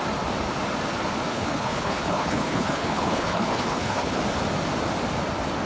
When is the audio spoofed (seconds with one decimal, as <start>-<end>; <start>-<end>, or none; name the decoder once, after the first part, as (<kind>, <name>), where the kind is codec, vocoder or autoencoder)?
1.3-4.2 (codec, HILCodec)

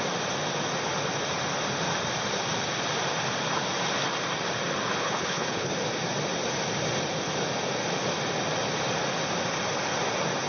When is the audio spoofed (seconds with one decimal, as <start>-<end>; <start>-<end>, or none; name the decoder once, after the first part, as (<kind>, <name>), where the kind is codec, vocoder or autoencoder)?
5.0-5.7 (codec, HILCodec)

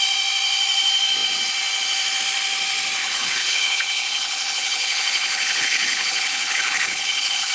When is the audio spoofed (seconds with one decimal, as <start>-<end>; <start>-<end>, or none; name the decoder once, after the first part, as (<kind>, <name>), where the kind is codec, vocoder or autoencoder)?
3.0-7.5 (codec, HILCodec)

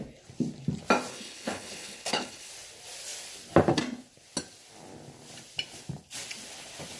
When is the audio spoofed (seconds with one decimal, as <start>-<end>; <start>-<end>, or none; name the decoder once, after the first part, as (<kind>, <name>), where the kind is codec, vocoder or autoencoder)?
1.1-2.5 (codec, HILCodec)

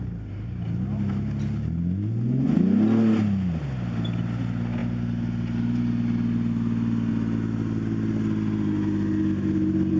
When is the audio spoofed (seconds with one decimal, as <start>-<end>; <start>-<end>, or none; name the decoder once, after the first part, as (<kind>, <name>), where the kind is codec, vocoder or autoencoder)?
none

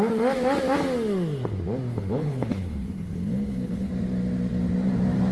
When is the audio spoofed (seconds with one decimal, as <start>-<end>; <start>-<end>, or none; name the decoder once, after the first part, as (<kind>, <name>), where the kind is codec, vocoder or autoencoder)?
1.9-3.9 (codec, HILCodec)

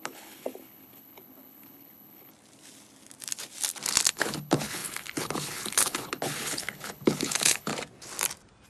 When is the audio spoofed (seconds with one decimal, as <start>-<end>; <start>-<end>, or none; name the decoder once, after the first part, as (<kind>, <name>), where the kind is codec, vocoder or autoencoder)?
0.0-2.3 (codec, HILCodec); 4.1-7.7